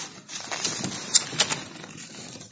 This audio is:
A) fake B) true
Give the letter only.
B